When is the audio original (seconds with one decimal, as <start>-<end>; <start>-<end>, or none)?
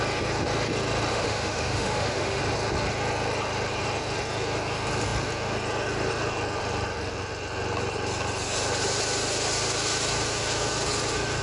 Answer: 0.0-1.1; 2.4-11.4